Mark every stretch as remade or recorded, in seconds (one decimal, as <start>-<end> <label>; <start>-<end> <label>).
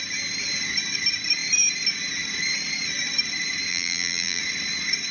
0.0-3.7 recorded; 3.7-4.4 remade; 4.4-5.1 recorded